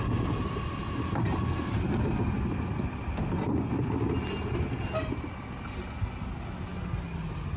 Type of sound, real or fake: real